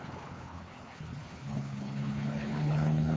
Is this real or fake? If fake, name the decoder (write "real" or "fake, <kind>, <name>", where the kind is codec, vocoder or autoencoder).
fake, codec, HILCodec